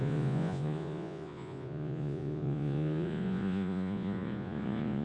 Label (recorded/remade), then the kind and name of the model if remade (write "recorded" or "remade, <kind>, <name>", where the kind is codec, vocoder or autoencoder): remade, vocoder, Vocos